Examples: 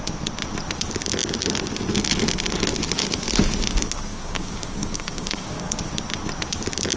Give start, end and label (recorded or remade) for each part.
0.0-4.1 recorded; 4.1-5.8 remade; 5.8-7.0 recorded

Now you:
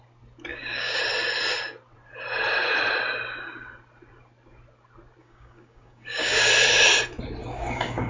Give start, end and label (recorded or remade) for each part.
0.0-0.5 recorded; 0.5-1.0 remade; 1.0-5.2 recorded; 5.2-6.5 remade; 6.5-7.4 recorded; 7.4-8.1 remade

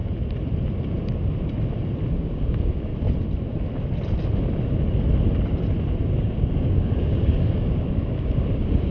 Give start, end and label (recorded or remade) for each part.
0.0-2.1 recorded; 2.1-2.9 remade; 2.9-6.0 recorded; 6.0-8.9 remade

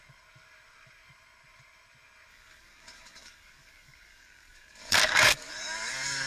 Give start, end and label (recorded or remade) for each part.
0.0-2.3 recorded; 2.3-6.3 remade

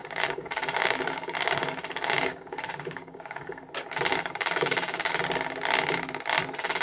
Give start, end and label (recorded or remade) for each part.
0.0-3.6 remade; 3.6-4.1 recorded; 4.1-5.1 remade; 5.1-6.8 recorded